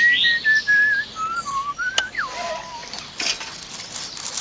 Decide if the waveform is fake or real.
real